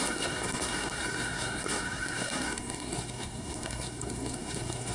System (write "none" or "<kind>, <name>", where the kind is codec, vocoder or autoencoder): codec, SNAC